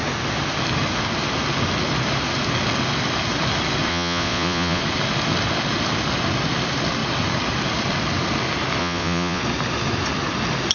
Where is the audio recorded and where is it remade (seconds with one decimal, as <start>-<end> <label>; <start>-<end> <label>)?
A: 0.0-3.9 recorded; 3.9-4.8 remade; 4.8-8.8 recorded; 8.8-9.4 remade; 9.4-10.7 recorded